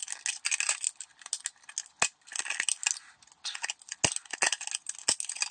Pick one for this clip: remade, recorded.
recorded